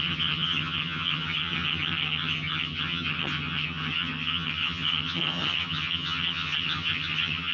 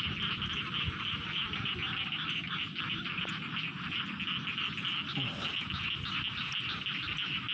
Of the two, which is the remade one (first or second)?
first